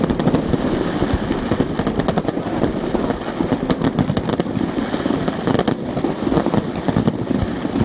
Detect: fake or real real